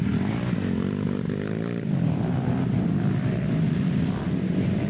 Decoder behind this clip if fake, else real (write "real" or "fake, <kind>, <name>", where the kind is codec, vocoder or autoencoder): fake, vocoder, BigVGAN v2